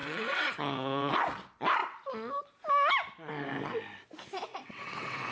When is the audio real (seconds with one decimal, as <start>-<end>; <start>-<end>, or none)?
1.1-4.5